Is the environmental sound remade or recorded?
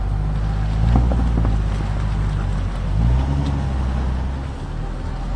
recorded